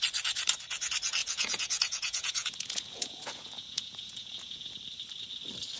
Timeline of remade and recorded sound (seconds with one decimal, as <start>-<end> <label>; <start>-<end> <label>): 0.0-1.2 recorded; 1.2-4.7 remade; 4.7-5.8 recorded